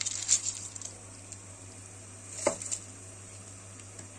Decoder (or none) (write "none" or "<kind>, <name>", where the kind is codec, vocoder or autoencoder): none